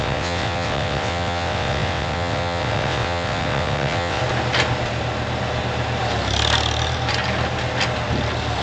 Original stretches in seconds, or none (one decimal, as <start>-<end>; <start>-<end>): 4.2-8.6